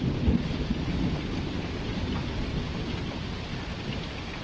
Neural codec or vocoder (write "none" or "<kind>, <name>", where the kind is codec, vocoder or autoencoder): vocoder, BigVGAN v2